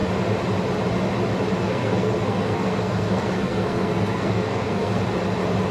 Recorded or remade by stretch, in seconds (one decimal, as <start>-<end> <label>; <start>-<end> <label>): 0.0-1.6 recorded; 1.6-5.0 remade; 5.0-5.7 recorded